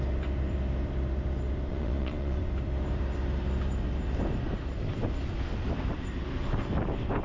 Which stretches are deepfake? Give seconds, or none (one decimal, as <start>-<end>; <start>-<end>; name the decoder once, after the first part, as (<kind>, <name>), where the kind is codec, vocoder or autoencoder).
1.7-2.4 (vocoder, Vocos)